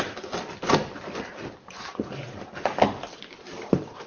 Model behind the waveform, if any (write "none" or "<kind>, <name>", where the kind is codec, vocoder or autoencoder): vocoder, BigVGAN v2